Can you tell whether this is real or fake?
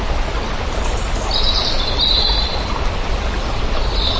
real